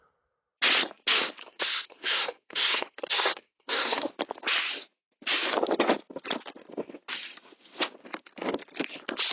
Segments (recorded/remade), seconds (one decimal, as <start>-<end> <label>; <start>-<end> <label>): 0.0-1.4 recorded; 1.4-4.1 remade; 4.1-9.3 recorded